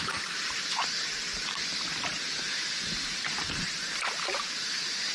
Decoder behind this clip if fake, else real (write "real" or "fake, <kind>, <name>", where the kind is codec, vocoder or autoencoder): real